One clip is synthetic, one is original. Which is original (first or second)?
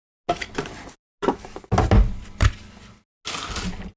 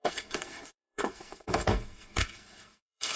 first